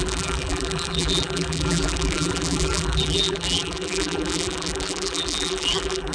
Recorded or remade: remade